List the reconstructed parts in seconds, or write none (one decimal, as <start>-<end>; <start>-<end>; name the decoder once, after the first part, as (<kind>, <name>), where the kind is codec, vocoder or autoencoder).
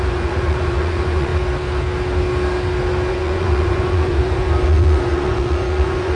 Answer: 0.0-1.3 (vocoder, Vocos); 3.1-6.2